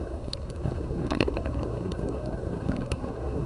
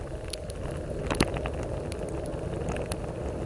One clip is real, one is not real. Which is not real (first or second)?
first